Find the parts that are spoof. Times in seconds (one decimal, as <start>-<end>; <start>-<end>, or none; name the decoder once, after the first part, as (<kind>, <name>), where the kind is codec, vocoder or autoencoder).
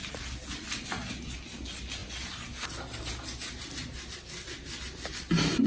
none